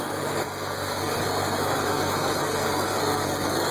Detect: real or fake fake